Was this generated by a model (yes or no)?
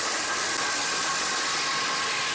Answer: no